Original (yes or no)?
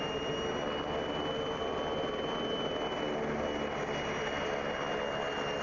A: yes